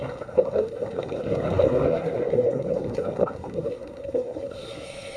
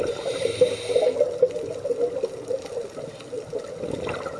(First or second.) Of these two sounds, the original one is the second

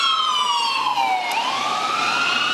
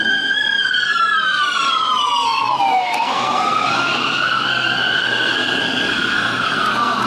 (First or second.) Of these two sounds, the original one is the first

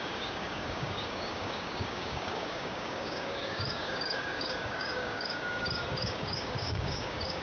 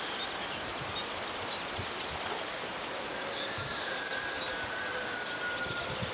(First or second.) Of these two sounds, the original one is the second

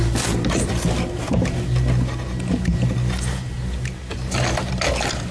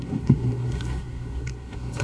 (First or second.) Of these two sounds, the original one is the first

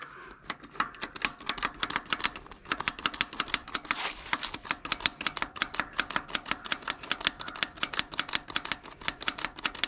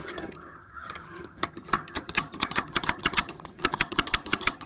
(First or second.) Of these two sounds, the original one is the first